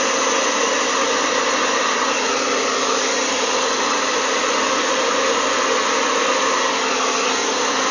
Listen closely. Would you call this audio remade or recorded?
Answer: recorded